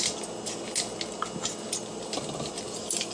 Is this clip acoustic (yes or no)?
yes